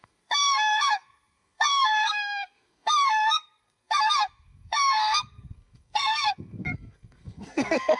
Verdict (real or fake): fake